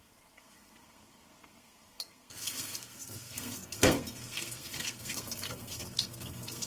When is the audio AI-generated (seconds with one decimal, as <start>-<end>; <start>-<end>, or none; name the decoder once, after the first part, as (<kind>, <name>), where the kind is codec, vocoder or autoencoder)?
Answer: 0.0-6.7 (codec, SNAC)